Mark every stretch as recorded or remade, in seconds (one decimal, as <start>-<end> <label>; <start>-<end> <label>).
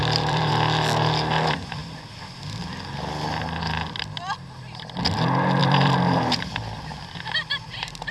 0.0-0.5 remade; 0.5-5.6 recorded; 5.6-6.6 remade; 6.6-8.1 recorded